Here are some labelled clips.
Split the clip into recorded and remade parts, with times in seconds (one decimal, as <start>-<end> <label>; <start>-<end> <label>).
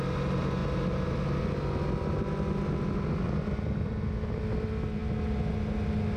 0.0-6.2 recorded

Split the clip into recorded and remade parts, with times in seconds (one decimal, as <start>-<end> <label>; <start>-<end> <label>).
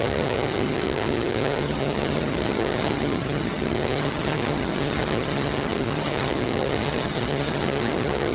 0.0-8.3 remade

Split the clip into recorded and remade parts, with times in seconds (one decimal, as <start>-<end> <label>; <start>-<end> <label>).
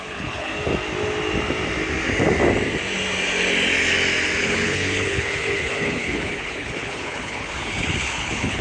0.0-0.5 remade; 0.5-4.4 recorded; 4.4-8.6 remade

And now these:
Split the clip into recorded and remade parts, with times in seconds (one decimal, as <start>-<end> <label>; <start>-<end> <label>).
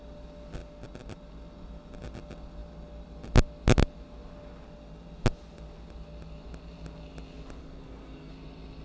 0.0-7.6 recorded; 7.6-8.3 remade; 8.3-8.8 recorded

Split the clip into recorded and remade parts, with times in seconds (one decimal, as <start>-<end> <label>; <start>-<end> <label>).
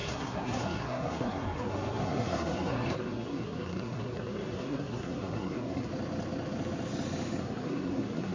0.0-5.9 remade; 5.9-7.4 recorded; 7.4-8.3 remade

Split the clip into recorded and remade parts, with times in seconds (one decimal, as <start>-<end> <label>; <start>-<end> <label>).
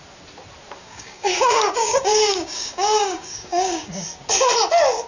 0.0-0.8 recorded; 0.8-3.9 remade; 3.9-5.1 recorded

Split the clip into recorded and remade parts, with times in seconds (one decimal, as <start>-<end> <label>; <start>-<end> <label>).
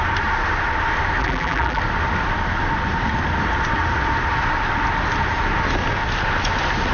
0.0-1.2 recorded; 1.2-1.8 remade; 1.8-6.9 recorded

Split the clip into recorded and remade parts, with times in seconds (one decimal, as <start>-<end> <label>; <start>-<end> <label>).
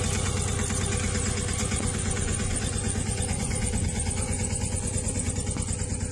0.0-1.6 recorded; 1.6-5.3 remade; 5.3-6.1 recorded